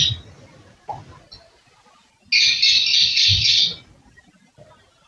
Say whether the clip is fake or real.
real